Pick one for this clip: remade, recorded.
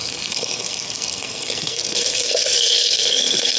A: remade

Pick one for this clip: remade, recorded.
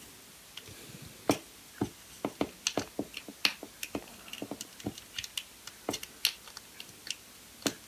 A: recorded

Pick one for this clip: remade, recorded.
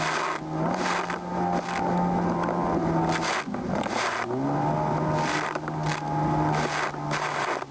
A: recorded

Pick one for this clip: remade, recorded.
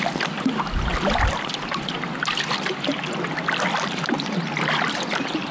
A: recorded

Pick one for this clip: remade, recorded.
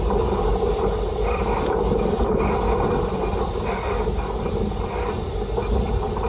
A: recorded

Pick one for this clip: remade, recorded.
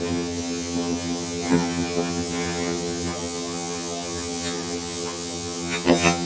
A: remade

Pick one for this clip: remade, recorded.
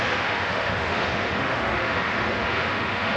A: remade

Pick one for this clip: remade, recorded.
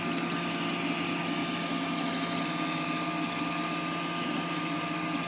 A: recorded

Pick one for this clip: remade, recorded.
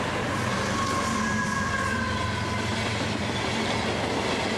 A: recorded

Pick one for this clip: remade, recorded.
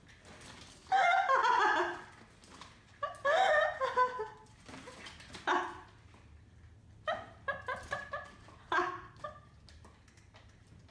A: recorded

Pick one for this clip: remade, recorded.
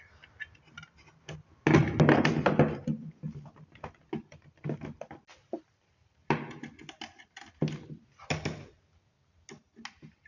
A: recorded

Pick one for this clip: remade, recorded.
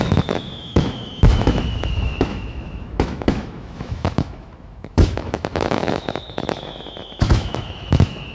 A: remade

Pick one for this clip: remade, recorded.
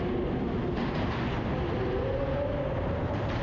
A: recorded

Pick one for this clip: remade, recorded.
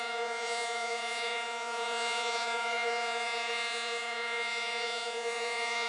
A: remade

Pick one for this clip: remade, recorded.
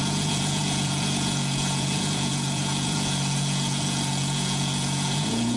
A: remade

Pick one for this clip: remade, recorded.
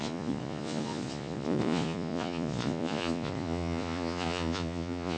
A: remade